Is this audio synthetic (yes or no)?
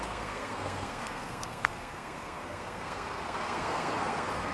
yes